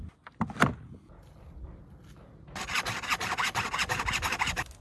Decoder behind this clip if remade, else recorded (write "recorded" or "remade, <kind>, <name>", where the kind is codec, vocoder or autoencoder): recorded